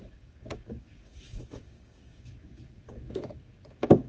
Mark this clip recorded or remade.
remade